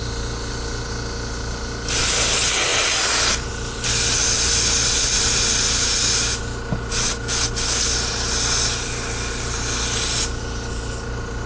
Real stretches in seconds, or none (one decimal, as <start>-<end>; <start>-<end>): 0.0-11.5